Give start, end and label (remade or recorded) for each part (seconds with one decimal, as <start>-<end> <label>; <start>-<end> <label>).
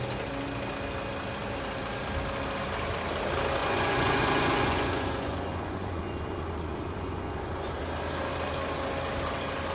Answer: 0.0-3.6 recorded; 3.6-7.7 remade; 7.7-9.7 recorded